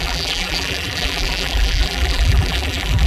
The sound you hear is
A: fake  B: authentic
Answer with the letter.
A